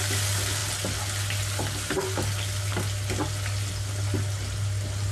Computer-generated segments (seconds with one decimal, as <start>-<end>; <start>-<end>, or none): none